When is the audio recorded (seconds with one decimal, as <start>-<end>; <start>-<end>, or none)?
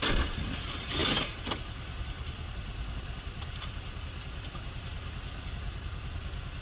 0.0-6.6